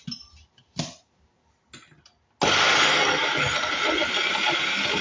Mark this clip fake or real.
real